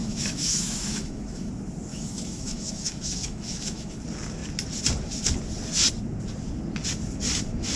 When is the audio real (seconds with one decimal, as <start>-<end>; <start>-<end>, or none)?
1.5-1.9; 4.0-7.8